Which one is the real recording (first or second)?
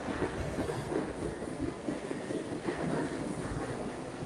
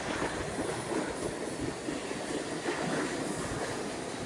second